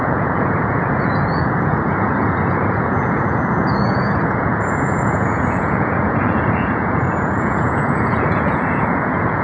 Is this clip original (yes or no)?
no